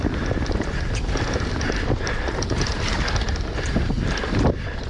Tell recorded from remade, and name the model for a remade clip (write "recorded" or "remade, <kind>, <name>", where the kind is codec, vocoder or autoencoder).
recorded